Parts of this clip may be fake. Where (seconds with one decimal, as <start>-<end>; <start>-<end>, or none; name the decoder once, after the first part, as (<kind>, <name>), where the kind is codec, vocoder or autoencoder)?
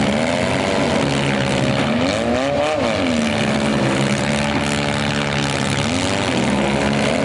3.7-4.3 (vocoder, BigVGAN v2)